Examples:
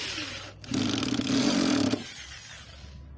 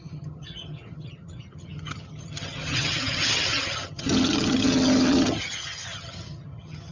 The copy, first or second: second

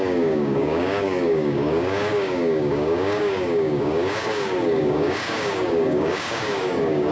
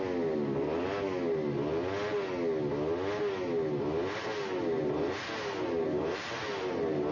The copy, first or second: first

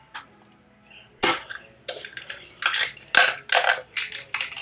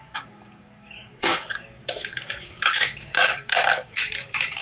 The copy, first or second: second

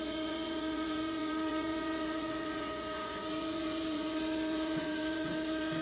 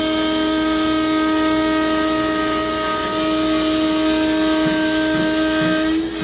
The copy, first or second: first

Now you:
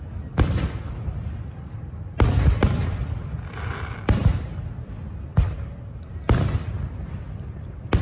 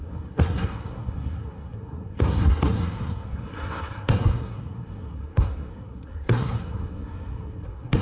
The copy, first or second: second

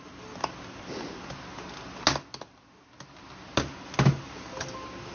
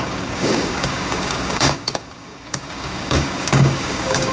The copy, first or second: second